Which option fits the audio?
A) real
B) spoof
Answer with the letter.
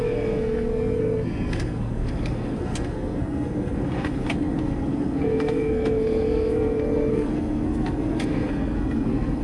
B